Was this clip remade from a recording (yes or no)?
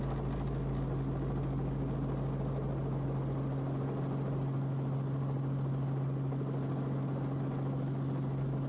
no